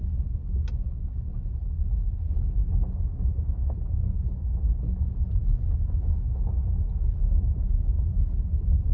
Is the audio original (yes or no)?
yes